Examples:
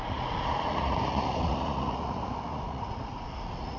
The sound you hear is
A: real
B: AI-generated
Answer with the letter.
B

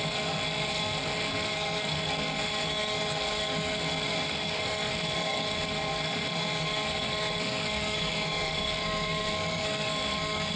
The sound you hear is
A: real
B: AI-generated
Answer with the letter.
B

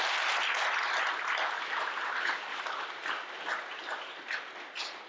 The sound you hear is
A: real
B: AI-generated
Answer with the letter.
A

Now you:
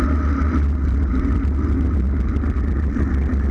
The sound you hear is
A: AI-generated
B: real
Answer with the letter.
B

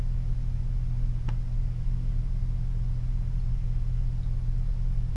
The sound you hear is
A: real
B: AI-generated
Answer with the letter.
A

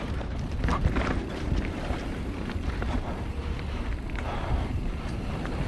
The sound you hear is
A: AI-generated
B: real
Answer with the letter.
A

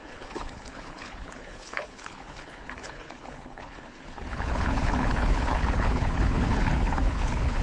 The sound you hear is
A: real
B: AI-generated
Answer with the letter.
B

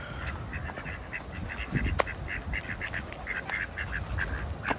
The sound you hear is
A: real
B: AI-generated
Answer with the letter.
A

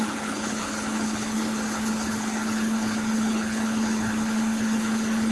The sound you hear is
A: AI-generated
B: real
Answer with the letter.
A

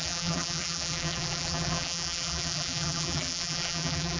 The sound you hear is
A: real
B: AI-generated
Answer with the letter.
B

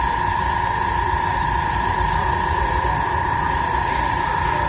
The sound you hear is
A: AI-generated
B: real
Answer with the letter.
A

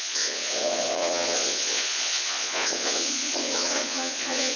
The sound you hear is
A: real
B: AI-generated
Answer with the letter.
B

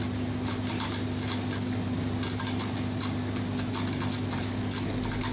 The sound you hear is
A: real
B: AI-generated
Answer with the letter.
A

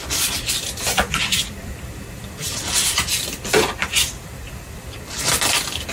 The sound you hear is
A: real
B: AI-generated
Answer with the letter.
B